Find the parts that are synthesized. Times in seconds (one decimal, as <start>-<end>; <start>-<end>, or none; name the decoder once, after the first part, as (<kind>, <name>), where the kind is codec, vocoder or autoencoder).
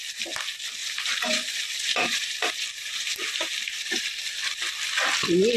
0.8-4.2 (vocoder, BigVGAN v2)